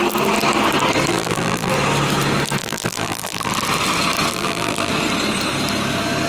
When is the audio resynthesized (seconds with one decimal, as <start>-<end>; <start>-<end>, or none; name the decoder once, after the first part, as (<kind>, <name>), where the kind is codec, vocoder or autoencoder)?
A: 1.1-1.7 (vocoder, BigVGAN v2); 2.6-3.5; 4.3-4.9